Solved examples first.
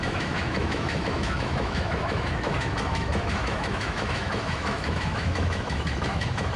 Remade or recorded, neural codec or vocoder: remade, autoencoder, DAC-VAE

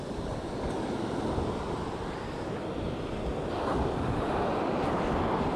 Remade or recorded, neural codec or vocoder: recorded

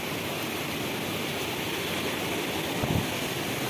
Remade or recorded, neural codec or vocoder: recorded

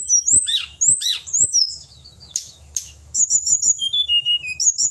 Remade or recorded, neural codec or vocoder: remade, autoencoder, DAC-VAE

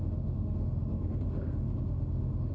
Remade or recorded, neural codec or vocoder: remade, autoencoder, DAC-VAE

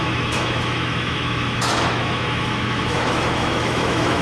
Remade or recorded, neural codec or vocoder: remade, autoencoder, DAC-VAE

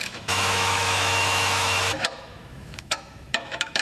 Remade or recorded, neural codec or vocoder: remade, autoencoder, DAC-VAE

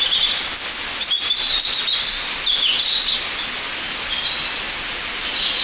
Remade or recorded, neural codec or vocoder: recorded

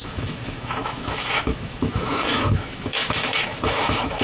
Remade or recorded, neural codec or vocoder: remade, autoencoder, DAC-VAE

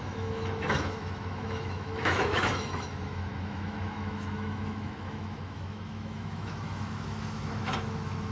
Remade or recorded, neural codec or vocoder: remade, autoencoder, DAC-VAE